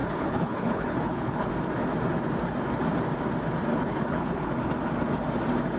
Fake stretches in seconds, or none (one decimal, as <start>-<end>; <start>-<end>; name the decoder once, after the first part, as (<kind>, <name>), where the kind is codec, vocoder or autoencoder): 0.0-1.5 (codec, HILCodec); 3.7-4.5